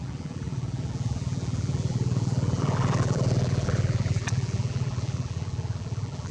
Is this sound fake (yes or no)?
yes